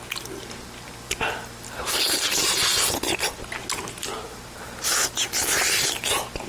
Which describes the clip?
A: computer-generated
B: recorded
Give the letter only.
B